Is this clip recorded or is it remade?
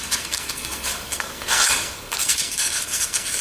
remade